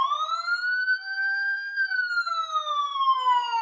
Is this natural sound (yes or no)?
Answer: no